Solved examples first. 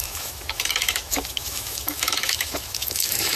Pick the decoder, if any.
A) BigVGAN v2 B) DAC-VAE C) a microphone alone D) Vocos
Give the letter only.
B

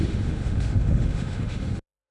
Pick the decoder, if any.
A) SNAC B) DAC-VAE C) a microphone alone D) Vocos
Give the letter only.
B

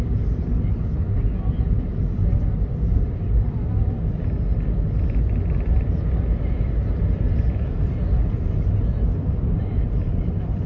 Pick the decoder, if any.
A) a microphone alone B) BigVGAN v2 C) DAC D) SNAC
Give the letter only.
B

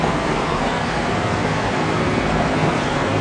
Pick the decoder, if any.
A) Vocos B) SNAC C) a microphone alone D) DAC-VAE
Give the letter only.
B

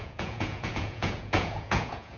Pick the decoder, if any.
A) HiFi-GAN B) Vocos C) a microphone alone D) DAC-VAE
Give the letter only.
B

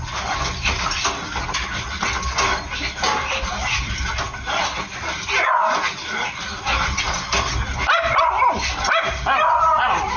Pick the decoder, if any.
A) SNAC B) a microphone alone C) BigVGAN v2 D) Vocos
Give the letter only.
B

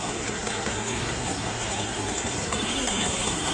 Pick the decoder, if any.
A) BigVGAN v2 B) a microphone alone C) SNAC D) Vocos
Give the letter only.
C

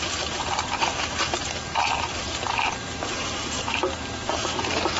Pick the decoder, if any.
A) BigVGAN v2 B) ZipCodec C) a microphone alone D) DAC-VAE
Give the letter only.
A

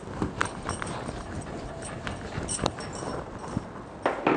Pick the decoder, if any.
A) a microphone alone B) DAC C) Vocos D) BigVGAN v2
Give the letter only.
A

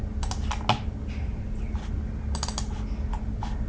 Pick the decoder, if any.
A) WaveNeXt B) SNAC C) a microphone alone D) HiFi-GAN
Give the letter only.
C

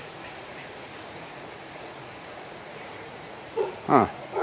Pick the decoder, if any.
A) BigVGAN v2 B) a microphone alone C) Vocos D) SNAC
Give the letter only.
C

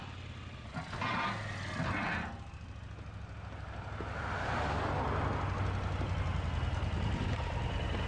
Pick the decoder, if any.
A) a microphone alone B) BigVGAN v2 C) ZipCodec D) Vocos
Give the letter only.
A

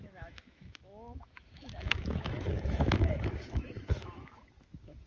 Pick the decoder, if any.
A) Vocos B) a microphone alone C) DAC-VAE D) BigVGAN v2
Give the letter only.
C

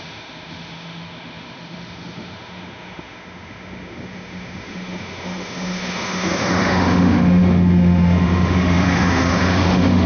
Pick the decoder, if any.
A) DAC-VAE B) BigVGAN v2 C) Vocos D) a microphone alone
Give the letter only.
A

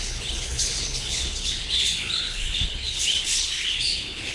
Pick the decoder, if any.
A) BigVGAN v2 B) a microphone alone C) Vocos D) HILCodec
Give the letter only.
D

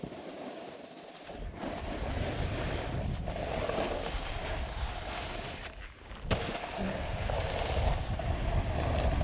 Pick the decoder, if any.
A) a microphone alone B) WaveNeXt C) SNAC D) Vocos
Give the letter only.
A